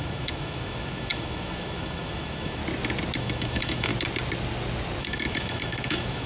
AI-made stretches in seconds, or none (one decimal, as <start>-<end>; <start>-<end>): 0.0-2.6; 3.2-3.9; 5.0-6.3